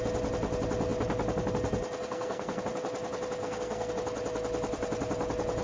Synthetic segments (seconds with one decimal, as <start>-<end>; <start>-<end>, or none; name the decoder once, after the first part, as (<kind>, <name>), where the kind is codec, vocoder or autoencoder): 2.0-2.6 (codec, SNAC); 3.4-3.9